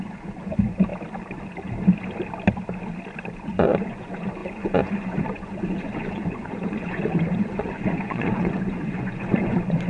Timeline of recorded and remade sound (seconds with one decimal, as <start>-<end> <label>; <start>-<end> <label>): 0.0-0.9 remade; 0.9-3.4 recorded; 3.4-9.9 remade

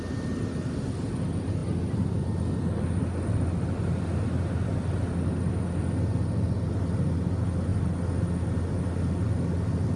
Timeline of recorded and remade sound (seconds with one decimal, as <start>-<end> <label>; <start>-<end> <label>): 0.0-10.0 recorded

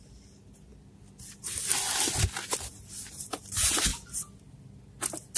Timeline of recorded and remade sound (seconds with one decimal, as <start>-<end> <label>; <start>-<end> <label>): 0.0-5.4 recorded